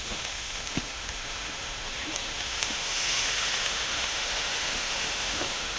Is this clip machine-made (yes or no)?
yes